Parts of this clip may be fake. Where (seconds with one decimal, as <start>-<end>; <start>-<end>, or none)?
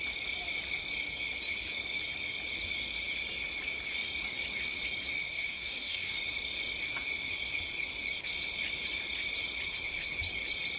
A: 5.2-6.2